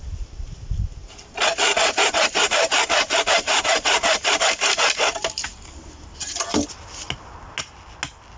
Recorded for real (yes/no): yes